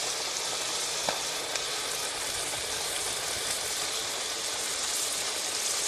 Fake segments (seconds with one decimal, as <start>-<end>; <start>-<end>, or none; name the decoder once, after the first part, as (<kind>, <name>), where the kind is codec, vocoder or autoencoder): 2.0-5.5 (vocoder, BigVGAN v2)